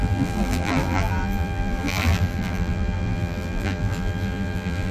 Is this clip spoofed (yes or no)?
yes